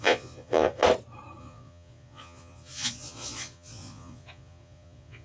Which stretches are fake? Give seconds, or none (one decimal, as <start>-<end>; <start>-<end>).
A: 0.0-0.8; 1.4-5.2